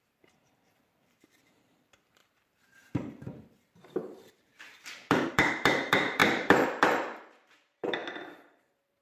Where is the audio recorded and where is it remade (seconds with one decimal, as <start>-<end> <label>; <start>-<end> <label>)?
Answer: 0.0-8.0 remade; 8.0-8.6 recorded; 8.6-9.0 remade